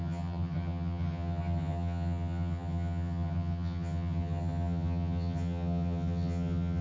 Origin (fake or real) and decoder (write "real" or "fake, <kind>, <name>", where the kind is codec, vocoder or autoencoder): fake, vocoder, HiFi-GAN